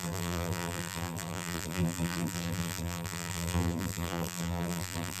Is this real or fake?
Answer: fake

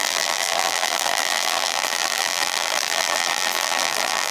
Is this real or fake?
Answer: fake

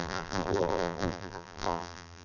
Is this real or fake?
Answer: fake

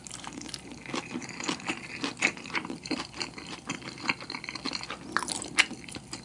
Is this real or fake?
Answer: fake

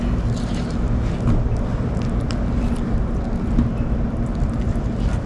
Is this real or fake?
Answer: real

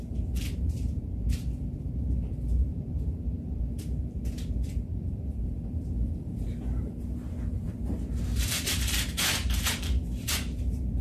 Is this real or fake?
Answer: fake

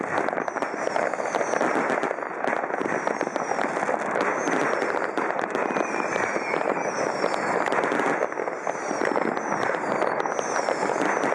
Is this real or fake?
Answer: real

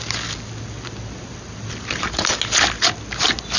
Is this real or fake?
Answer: real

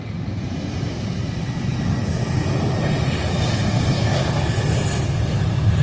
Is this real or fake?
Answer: real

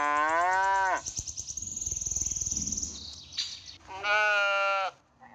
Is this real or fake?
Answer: real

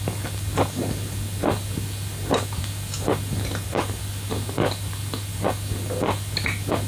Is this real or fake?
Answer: real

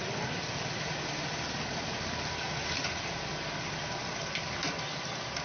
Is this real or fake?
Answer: real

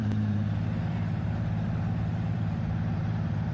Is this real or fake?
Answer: fake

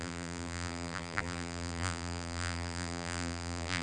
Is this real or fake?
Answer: fake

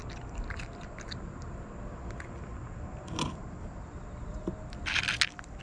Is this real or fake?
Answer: real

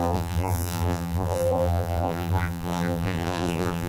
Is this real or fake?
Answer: fake